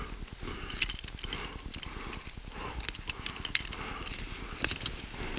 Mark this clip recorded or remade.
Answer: recorded